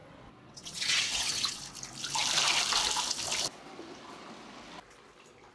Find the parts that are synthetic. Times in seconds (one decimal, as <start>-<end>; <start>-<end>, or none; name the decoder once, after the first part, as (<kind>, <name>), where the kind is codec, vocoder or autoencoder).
0.0-1.6 (vocoder, WaveNeXt)